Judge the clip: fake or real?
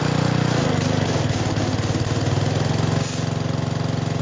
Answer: real